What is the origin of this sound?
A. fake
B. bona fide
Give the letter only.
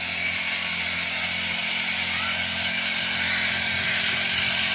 B